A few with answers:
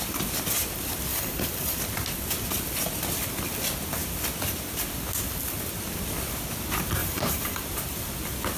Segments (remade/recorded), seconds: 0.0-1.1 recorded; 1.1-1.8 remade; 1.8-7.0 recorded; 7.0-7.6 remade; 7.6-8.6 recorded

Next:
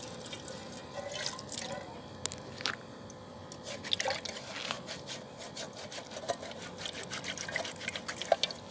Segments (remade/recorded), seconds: 0.0-8.7 recorded